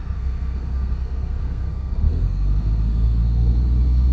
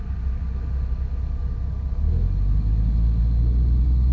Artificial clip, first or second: first